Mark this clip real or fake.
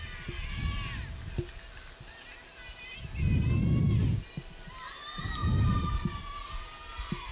real